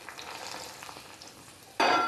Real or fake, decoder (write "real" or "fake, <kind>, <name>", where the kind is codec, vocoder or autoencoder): real